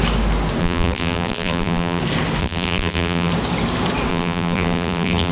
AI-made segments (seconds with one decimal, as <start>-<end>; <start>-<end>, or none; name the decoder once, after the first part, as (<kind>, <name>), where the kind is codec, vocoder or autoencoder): 0.6-2.0 (vocoder, BigVGAN v2); 2.4-3.3; 4.1-5.3